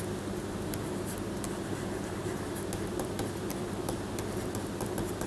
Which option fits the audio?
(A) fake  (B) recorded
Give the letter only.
B